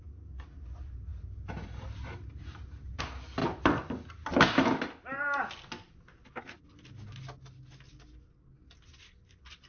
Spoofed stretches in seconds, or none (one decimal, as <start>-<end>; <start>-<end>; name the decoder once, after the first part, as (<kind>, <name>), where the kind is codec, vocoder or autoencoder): 1.1-3.0 (vocoder, BigVGAN v2)